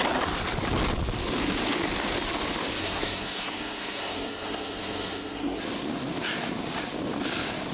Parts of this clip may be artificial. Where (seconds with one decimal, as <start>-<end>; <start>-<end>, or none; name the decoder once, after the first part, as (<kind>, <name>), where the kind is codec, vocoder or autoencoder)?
2.8-5.6 (codec, SNAC)